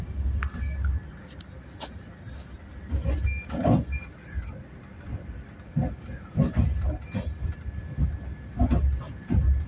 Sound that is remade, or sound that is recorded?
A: recorded